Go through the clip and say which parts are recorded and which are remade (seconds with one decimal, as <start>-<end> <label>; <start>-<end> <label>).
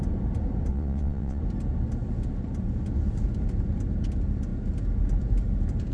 0.0-0.7 recorded; 0.7-1.4 remade; 1.4-5.9 recorded